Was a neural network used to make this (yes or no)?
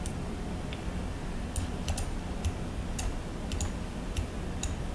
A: no